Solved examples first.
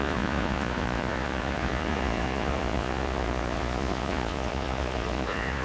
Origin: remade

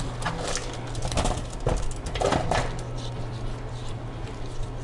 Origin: recorded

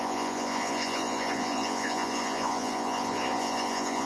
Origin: remade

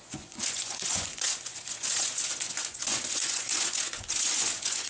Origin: remade